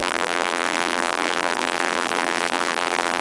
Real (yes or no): no